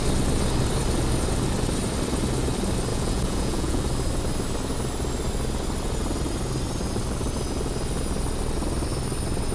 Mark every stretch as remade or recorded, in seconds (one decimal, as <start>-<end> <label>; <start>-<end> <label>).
0.0-2.9 recorded; 2.9-3.8 remade; 3.8-9.5 recorded